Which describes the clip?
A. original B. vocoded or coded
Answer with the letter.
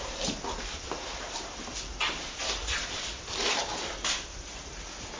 A